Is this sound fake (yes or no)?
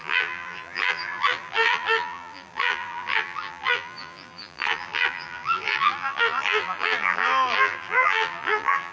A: yes